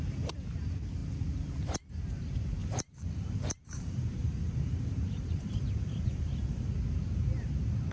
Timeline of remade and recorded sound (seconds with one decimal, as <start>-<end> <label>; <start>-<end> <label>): 0.0-2.6 recorded; 2.6-6.7 remade; 6.7-7.9 recorded

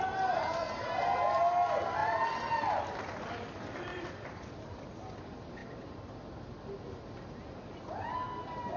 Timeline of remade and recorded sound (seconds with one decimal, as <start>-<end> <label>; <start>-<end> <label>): 0.0-2.0 recorded; 2.0-2.8 remade; 2.8-3.9 recorded; 3.9-4.5 remade; 4.5-8.8 recorded

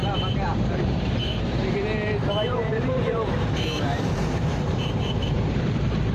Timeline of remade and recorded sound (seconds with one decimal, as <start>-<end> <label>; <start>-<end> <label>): 0.0-6.1 remade